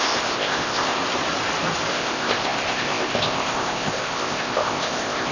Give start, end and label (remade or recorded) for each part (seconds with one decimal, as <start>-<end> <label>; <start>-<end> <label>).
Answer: 0.0-1.0 remade; 1.0-1.9 recorded; 1.9-5.3 remade

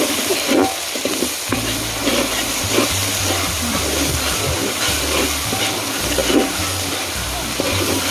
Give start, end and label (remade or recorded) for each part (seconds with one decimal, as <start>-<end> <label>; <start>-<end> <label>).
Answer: 0.0-2.0 remade; 2.0-3.4 recorded; 3.4-6.2 remade; 6.2-7.0 recorded; 7.0-8.1 remade

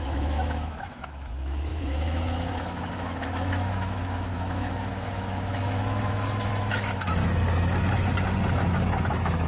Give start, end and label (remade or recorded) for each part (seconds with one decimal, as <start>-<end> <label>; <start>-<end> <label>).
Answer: 0.0-7.2 remade; 7.2-8.5 recorded; 8.5-9.5 remade

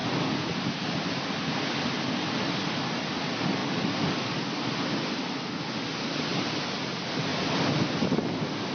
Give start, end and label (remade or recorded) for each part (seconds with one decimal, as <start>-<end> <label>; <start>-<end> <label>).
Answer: 0.0-8.7 recorded